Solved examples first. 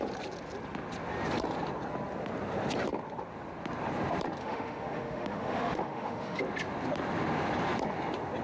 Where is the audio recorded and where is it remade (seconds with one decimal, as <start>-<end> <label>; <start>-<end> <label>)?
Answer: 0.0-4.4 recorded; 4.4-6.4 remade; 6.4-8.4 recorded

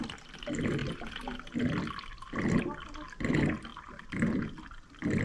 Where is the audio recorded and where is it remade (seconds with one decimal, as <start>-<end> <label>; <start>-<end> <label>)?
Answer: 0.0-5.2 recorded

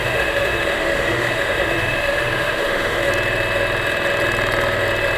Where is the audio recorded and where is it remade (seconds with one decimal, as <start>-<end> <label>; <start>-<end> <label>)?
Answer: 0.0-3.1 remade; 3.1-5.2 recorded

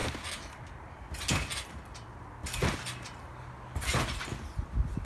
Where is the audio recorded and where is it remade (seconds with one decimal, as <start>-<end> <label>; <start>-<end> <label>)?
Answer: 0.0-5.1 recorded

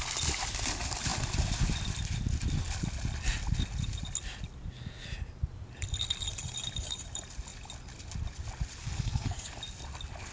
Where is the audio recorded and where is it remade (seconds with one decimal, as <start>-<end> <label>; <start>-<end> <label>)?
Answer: 0.0-8.8 recorded; 8.8-9.5 remade; 9.5-10.3 recorded

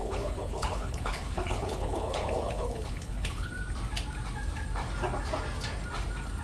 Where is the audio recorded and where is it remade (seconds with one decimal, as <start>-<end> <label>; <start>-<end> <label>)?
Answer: 0.0-3.5 remade; 3.5-6.4 recorded

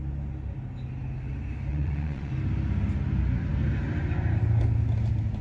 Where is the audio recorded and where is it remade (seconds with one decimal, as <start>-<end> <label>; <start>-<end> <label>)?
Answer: 0.0-1.7 recorded; 1.7-2.3 remade; 2.3-5.4 recorded